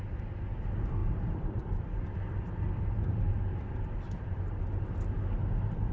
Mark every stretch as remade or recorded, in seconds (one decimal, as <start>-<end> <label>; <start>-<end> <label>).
0.0-1.0 recorded; 1.0-4.5 remade; 4.5-5.9 recorded